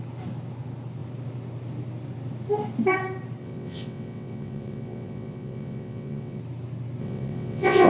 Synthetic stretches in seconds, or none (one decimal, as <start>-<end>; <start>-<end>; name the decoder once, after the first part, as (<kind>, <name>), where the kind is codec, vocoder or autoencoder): 3.4-6.4 (vocoder, WaveNeXt); 7.0-7.9